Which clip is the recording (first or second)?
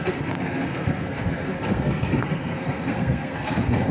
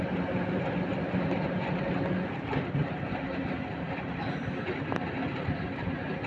second